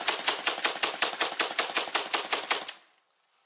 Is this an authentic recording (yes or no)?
yes